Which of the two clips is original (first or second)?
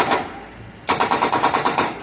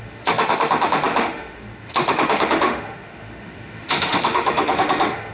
first